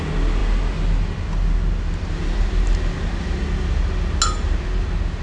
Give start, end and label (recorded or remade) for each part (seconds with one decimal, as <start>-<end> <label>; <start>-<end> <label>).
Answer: 0.0-5.2 recorded